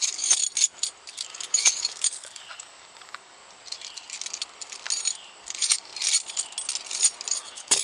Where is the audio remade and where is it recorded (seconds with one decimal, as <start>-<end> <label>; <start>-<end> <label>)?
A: 0.0-0.4 remade; 0.4-1.1 recorded; 1.1-3.4 remade; 3.4-5.3 recorded; 5.3-5.9 remade; 5.9-7.3 recorded; 7.3-7.8 remade